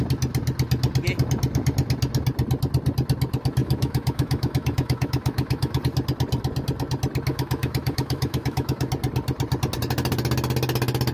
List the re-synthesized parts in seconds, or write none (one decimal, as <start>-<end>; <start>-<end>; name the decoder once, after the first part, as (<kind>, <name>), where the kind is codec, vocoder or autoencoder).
3.6-5.8 (autoencoder, DAC-VAE); 7.3-8.9